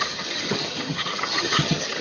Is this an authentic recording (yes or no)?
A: no